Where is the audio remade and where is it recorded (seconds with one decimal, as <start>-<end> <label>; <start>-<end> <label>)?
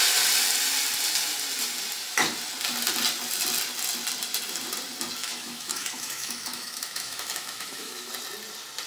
0.0-5.2 recorded; 5.2-8.1 remade; 8.1-8.9 recorded